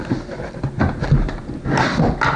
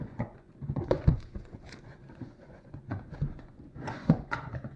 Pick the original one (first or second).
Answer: first